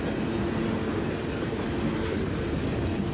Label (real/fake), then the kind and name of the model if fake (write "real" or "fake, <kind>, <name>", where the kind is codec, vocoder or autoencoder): real